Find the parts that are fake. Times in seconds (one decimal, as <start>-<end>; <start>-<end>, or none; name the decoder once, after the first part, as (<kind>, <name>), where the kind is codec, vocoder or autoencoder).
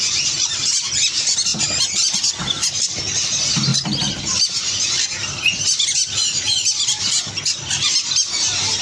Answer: none